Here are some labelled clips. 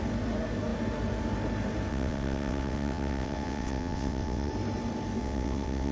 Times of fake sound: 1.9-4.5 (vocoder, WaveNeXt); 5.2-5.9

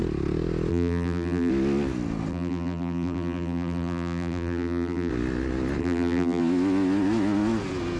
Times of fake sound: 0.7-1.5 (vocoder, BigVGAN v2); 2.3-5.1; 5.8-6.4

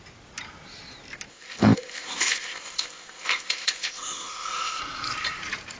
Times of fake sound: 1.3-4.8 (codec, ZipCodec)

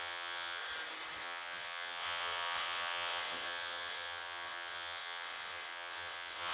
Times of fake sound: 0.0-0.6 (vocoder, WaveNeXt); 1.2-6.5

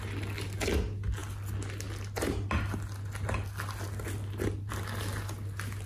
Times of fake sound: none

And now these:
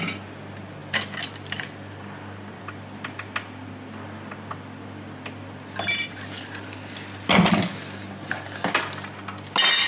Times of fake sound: none

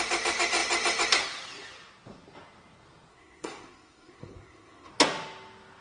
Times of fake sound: 3.1-4.9 (codec, SNAC)